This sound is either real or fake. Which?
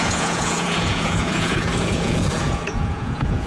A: fake